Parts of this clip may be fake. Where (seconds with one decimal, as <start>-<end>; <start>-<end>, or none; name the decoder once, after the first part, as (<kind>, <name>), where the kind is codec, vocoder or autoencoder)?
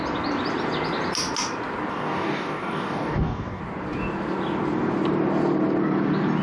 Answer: 1.9-3.6 (codec, DAC)